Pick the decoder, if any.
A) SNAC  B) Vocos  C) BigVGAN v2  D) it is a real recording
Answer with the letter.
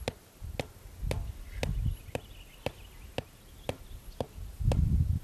D